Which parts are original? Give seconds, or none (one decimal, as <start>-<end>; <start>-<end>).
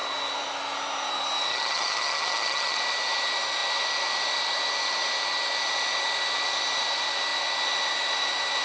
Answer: 0.0-1.5; 2.8-8.6